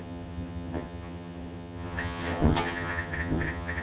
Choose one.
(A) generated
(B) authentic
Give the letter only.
A